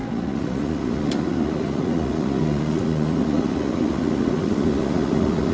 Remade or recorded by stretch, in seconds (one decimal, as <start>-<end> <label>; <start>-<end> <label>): 0.0-5.5 remade